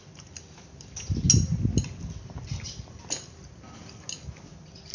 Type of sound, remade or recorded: recorded